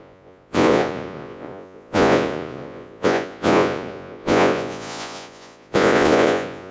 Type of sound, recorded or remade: remade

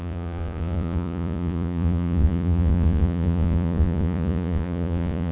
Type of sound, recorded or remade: remade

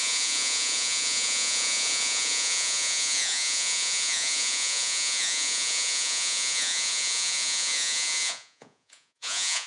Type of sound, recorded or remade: remade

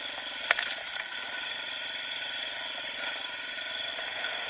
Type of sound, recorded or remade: recorded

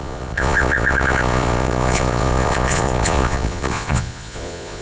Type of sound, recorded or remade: remade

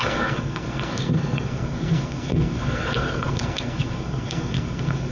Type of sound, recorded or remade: remade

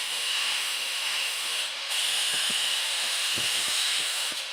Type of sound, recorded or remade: remade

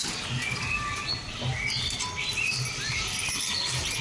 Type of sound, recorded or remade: recorded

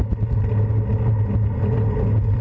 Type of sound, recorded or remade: recorded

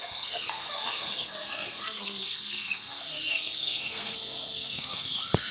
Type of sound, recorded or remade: remade